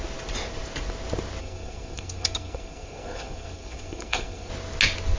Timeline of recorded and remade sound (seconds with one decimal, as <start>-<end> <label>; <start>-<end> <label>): 0.0-1.4 recorded; 1.4-4.5 remade; 4.5-5.2 recorded

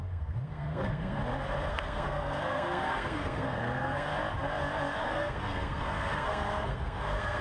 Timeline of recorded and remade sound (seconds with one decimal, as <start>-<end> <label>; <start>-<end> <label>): 0.0-1.2 remade; 1.2-1.7 recorded; 1.7-4.1 remade; 4.1-5.0 recorded; 5.0-7.4 remade

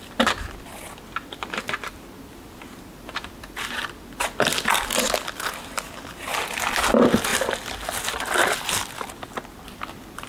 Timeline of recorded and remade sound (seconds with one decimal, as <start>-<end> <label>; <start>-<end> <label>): 0.0-10.3 recorded